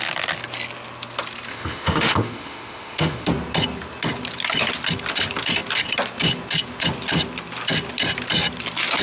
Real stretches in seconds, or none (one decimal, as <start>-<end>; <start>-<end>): 0.0-1.5; 3.3-9.0